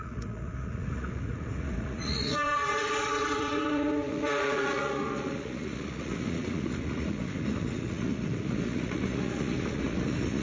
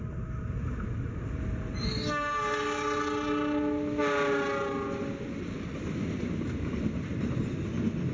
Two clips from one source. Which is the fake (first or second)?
first